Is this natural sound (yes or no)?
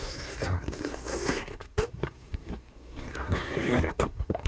no